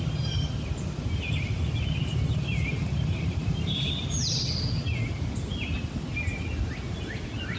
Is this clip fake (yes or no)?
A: no